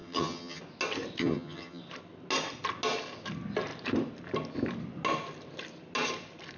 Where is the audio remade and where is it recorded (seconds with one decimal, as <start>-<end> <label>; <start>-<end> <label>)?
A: 0.0-0.6 remade; 0.6-1.2 recorded; 1.2-1.8 remade; 1.8-6.6 recorded